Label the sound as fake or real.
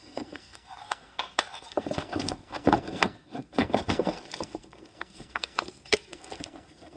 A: fake